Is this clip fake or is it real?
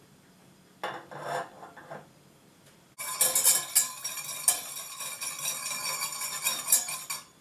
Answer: real